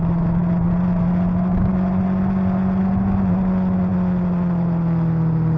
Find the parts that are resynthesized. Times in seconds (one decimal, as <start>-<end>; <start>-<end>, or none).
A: none